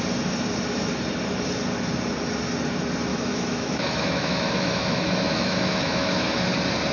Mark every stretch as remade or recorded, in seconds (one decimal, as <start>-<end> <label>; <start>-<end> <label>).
0.0-3.1 recorded; 3.1-6.4 remade; 6.4-6.9 recorded